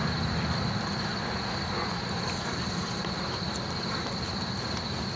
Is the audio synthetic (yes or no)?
no